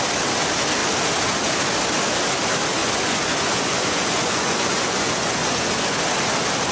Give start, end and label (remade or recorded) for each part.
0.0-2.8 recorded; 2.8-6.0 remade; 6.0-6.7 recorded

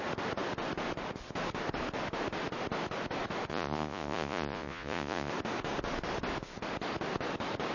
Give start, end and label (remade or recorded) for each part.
0.0-3.5 recorded; 3.5-5.3 remade; 5.3-7.7 recorded

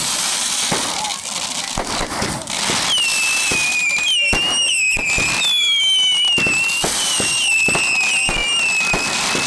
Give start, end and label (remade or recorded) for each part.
0.0-9.5 recorded

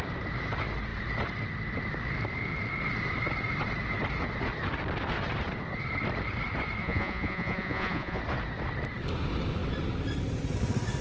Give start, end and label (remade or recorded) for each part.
0.0-6.8 recorded; 6.8-8.2 remade; 8.2-11.0 recorded

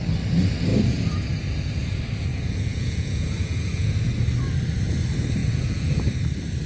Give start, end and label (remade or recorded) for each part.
0.0-2.3 recorded; 2.3-4.1 remade; 4.1-5.4 recorded; 5.4-6.0 remade; 6.0-6.7 recorded

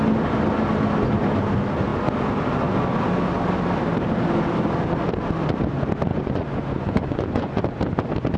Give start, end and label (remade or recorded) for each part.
0.0-6.1 recorded; 6.1-7.6 remade; 7.6-8.4 recorded

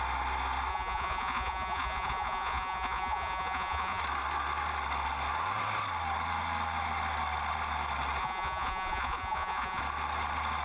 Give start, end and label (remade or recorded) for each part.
0.0-0.7 recorded; 0.7-4.0 remade; 4.0-8.2 recorded; 8.2-9.8 remade; 9.8-10.6 recorded

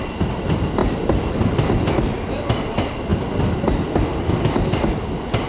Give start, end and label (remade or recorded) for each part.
0.0-5.5 recorded